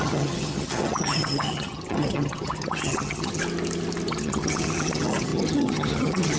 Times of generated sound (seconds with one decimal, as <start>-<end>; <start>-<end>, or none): 0.0-3.4; 4.1-6.4

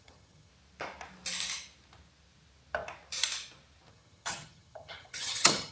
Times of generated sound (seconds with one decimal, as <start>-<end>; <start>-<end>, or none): 0.0-0.5; 3.9-5.7

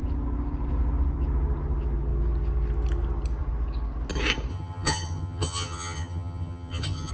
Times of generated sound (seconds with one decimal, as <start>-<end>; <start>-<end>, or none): 4.5-7.1

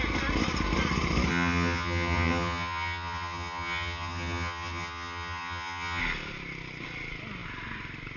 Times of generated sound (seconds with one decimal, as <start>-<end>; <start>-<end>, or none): 1.3-6.0

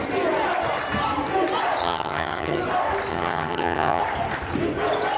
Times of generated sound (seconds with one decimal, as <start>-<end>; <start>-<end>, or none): 1.8-2.6; 3.1-4.0